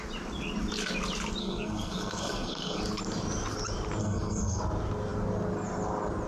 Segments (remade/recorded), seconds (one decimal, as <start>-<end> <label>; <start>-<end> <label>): 0.0-1.4 recorded; 1.4-2.8 remade; 2.8-4.0 recorded; 4.0-4.6 remade; 4.6-6.3 recorded